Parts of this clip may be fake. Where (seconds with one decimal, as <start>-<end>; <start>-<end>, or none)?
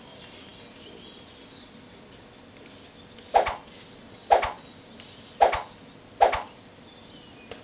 none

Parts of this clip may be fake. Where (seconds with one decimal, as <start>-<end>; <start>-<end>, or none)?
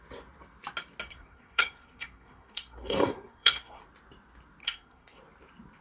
1.1-3.8; 4.6-5.2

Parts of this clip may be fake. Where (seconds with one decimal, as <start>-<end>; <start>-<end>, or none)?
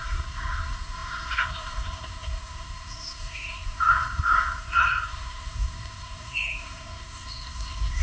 0.0-8.0